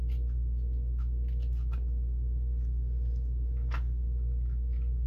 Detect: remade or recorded recorded